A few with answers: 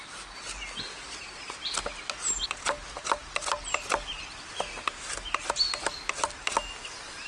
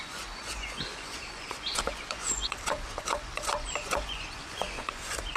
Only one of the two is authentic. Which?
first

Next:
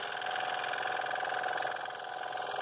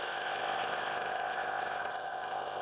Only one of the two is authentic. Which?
first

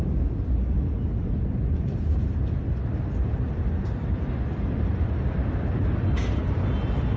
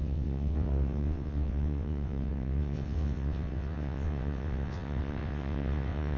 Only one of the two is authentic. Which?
first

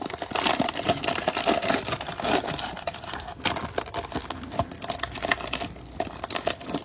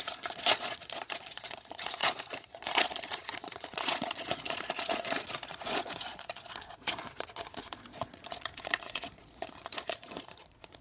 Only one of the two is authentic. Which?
first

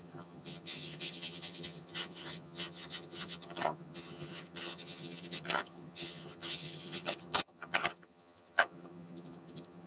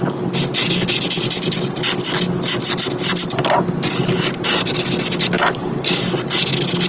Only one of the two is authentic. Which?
second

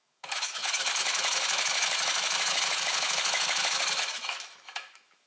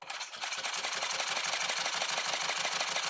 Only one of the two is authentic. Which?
second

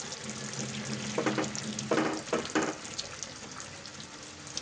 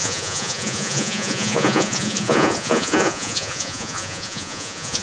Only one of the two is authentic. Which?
first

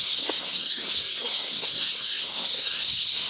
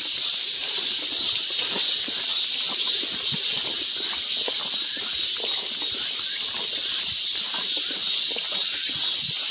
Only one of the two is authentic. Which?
second